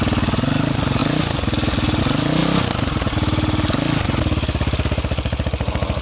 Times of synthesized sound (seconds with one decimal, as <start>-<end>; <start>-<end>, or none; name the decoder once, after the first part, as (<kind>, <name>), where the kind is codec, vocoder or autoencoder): none